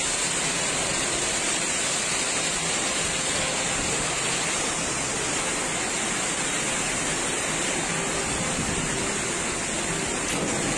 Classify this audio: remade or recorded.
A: recorded